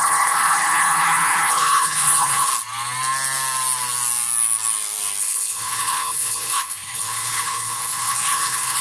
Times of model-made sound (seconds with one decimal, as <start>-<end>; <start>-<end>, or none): 0.0-2.5; 5.2-8.8